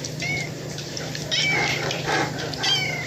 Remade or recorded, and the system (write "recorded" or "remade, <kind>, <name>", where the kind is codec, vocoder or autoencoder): remade, vocoder, BigVGAN v2